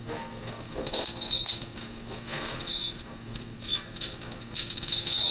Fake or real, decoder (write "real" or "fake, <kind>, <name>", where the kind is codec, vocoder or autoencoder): fake, codec, SNAC